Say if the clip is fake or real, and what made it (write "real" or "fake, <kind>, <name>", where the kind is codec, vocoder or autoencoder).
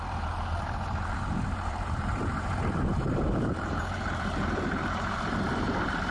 fake, vocoder, BigVGAN v2